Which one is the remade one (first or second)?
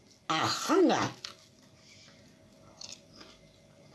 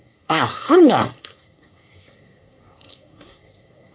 second